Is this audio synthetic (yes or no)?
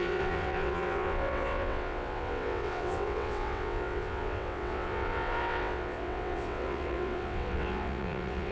yes